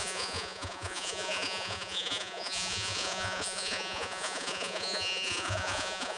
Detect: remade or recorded remade